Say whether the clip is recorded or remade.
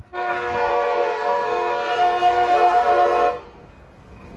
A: remade